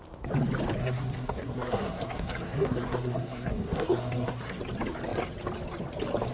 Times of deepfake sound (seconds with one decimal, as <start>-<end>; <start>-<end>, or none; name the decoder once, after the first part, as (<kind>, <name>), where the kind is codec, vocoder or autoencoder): 0.8-4.6 (codec, SNAC)